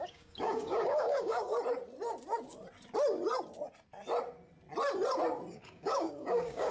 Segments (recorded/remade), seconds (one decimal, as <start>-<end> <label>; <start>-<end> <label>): 0.0-1.5 remade; 1.5-5.5 recorded; 5.5-6.7 remade

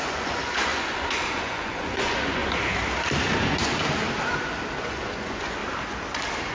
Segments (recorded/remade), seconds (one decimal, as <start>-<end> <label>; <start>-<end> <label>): 0.0-2.4 remade; 2.4-3.3 recorded; 3.3-3.7 remade; 3.7-4.8 recorded; 4.8-5.6 remade; 5.6-6.5 recorded

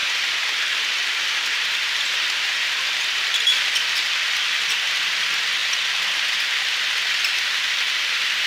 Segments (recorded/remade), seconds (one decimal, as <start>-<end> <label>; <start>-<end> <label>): 0.0-5.6 remade; 5.6-6.4 recorded; 6.4-8.5 remade